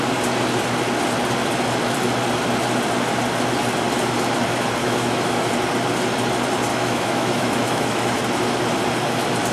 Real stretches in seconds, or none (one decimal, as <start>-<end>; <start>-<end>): 0.0-4.8; 5.5-6.7; 8.2-9.5